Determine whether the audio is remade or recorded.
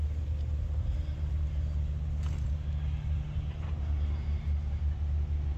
recorded